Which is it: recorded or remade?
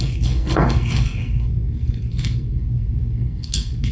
remade